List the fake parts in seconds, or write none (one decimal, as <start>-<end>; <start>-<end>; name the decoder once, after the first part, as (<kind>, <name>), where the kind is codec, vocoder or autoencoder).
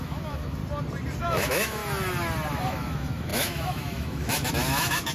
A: 0.0-0.6 (autoencoder, DAC-VAE); 1.2-1.8; 2.5-5.1